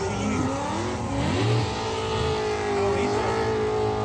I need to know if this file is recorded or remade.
recorded